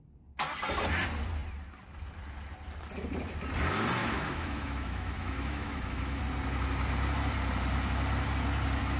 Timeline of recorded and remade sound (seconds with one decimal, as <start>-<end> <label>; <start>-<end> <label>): 0.0-4.0 recorded; 4.0-6.2 remade; 6.2-9.0 recorded